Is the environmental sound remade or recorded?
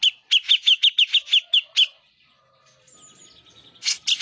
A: recorded